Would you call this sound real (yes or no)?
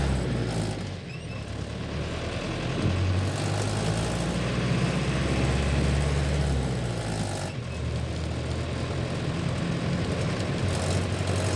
yes